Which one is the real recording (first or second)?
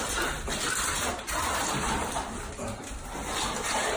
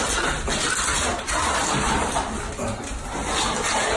second